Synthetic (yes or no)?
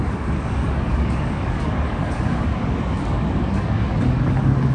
yes